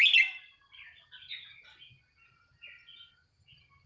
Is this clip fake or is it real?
real